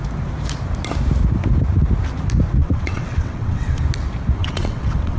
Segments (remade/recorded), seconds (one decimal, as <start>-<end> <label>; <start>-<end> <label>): 0.0-2.6 recorded; 2.6-3.8 remade; 3.8-4.4 recorded; 4.4-5.2 remade